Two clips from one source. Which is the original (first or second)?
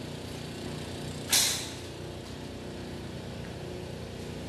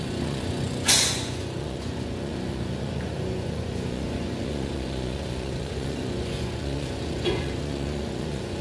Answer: first